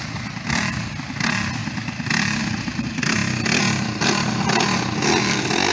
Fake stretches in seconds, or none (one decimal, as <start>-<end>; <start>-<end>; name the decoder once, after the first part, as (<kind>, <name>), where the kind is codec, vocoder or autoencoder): none